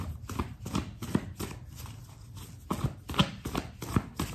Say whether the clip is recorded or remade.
recorded